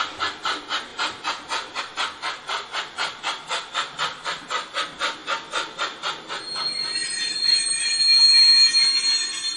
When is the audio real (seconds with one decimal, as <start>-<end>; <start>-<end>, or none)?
0.0-9.6